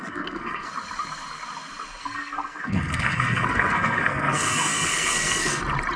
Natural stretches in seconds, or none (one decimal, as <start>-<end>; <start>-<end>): 0.7-2.0; 5.6-6.0

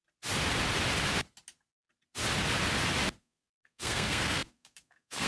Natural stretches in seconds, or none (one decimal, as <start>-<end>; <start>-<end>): 0.0-3.2

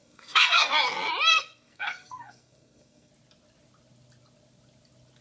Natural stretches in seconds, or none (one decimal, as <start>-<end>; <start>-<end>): 0.7-1.3; 3.1-5.2

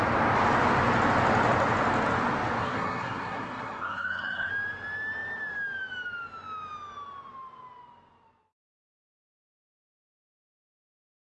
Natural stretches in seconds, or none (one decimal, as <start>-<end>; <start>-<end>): 0.0-2.6; 4.5-11.3

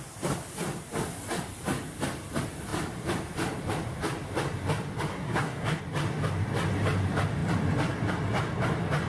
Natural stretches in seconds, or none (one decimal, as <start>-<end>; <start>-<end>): 0.0-5.1; 5.8-9.1